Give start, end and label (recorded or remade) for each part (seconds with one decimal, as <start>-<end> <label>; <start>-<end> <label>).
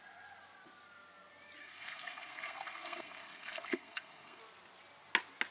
0.0-1.6 recorded; 1.6-4.4 remade; 4.4-5.5 recorded